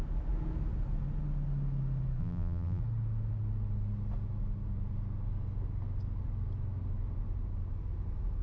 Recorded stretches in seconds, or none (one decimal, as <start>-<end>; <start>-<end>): 0.0-2.2; 2.8-8.4